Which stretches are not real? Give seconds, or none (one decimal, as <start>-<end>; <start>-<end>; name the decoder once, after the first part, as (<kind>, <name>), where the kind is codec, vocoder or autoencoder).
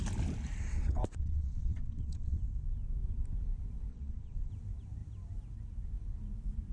0.7-2.4 (vocoder, WaveNeXt); 3.9-4.5